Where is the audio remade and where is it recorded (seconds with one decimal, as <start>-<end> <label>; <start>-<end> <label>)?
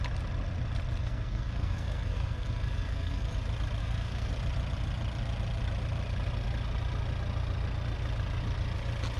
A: 0.0-1.0 recorded; 1.0-3.3 remade; 3.3-3.8 recorded; 3.8-4.3 remade; 4.3-9.2 recorded